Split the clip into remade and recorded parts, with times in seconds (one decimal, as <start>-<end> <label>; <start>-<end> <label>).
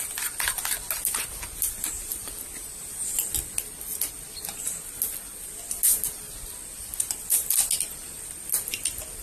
0.0-9.2 recorded